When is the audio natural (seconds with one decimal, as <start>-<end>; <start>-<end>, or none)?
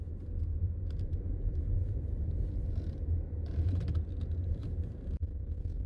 0.0-0.5; 4.0-4.4; 5.4-5.9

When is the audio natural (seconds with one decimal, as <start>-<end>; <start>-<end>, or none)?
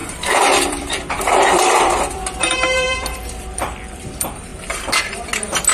4.5-5.7